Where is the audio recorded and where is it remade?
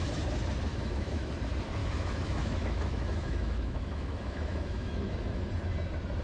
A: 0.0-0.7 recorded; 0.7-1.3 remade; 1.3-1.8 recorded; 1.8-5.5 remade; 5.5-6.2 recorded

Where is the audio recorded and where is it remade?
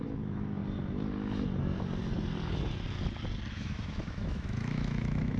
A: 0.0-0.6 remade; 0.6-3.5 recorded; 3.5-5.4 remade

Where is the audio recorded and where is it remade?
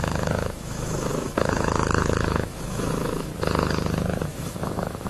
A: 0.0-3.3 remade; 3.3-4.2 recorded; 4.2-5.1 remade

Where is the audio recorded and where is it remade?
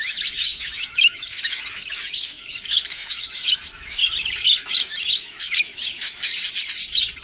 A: 0.0-6.3 remade; 6.3-7.2 recorded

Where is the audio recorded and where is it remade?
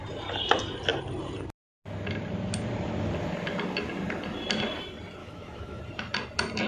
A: 0.0-5.2 recorded; 5.2-5.8 remade; 5.8-6.7 recorded